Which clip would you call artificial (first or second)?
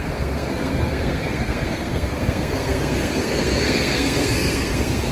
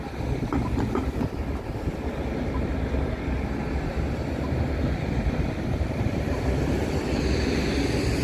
first